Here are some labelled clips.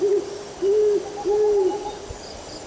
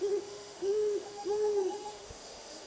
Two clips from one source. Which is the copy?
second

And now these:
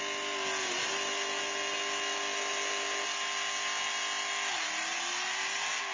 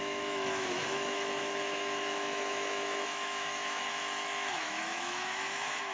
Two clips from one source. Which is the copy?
second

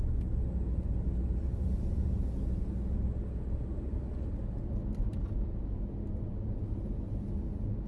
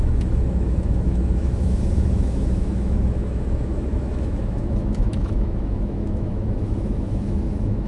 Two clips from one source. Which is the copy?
second